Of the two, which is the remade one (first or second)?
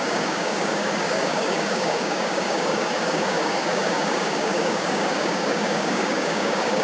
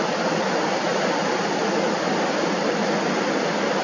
first